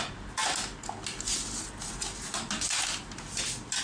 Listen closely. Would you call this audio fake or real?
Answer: real